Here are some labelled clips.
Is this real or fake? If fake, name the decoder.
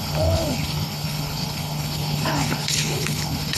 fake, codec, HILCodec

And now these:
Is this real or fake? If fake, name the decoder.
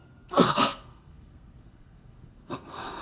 fake, codec, SNAC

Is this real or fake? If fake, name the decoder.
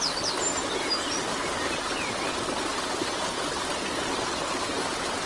real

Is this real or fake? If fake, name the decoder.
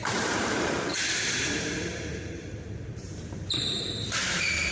fake, vocoder, BigVGAN v2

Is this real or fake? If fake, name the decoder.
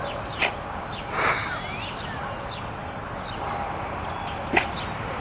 real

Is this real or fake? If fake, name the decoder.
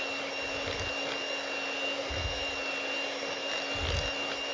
real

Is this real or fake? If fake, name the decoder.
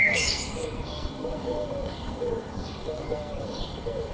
fake, codec, SNAC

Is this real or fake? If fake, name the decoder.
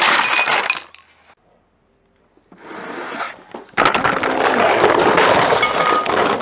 real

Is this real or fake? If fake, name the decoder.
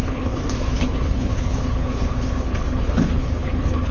fake, codec, HILCodec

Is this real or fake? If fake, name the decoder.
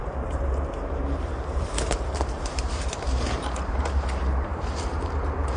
fake, vocoder, BigVGAN v2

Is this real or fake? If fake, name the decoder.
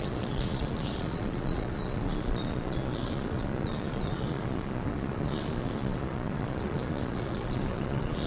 fake, vocoder, Vocos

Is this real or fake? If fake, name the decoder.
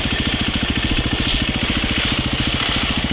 real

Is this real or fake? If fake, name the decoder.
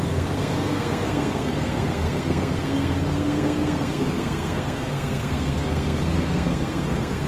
fake, codec, SNAC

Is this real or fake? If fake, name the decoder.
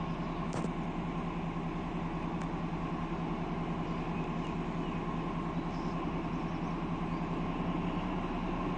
real